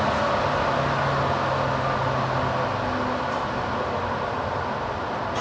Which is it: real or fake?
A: real